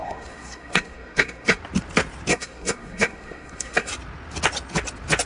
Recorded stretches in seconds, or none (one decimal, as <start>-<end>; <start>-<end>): 1.6-2.3; 3.9-5.3